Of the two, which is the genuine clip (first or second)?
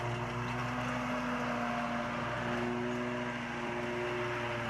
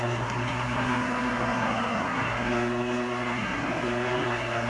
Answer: first